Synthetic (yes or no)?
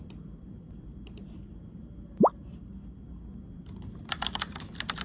no